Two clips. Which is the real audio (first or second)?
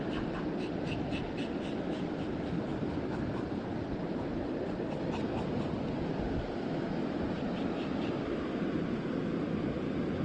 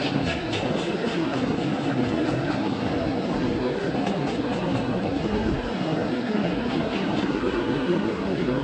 first